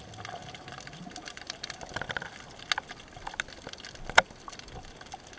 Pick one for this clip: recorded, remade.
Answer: recorded